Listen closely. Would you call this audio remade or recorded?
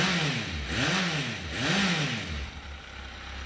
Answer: recorded